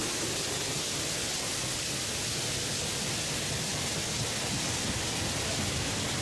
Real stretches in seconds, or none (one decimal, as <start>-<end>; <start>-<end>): 0.0-6.2

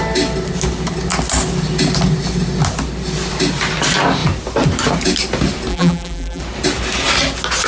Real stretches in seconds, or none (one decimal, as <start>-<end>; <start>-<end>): 0.0-5.7; 6.4-7.7

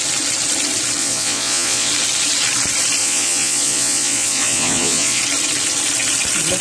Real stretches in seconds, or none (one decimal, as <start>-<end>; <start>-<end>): 0.0-1.0; 1.9-3.0; 5.2-6.6